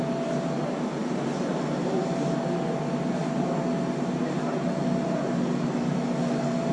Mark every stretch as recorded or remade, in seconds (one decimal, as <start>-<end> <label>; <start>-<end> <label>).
0.0-1.0 recorded; 1.0-1.7 remade; 1.7-6.7 recorded